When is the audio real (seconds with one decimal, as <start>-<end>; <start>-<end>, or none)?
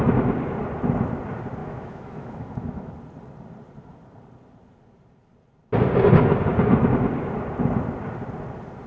0.0-1.6; 2.9-8.9